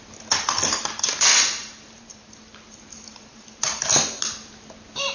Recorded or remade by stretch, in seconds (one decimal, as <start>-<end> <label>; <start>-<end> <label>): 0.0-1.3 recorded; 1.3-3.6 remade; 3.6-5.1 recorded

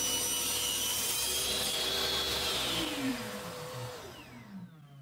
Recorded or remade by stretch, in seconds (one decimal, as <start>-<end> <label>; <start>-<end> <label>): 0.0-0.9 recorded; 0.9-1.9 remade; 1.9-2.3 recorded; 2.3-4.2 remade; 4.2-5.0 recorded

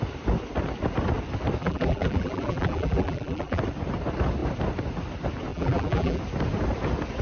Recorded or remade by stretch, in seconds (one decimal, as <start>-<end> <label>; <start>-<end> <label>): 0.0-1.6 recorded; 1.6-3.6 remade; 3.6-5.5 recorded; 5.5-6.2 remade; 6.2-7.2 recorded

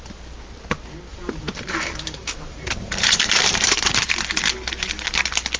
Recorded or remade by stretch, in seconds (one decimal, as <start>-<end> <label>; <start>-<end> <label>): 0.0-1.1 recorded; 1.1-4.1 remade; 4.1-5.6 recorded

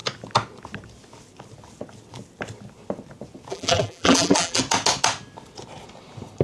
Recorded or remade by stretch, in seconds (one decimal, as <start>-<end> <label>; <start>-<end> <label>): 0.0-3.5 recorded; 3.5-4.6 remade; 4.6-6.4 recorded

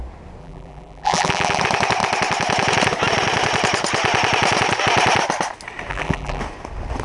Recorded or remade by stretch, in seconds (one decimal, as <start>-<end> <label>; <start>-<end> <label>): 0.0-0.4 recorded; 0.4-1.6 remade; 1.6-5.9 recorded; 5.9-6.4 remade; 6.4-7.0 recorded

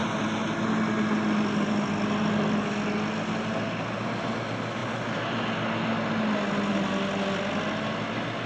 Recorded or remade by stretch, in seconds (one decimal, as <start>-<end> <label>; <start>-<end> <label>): 0.0-8.5 recorded